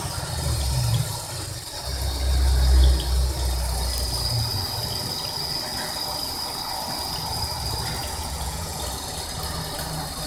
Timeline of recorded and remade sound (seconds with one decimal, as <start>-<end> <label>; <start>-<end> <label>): 0.0-8.0 recorded; 8.0-8.8 remade; 8.8-10.3 recorded